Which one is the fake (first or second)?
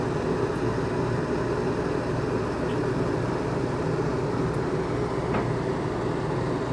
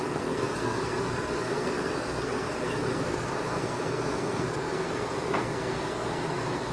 second